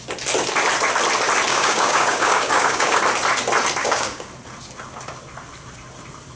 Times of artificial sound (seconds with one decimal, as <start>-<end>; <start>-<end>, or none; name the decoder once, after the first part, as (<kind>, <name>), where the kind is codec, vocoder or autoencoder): 1.5-3.0 (codec, DAC); 3.8-4.3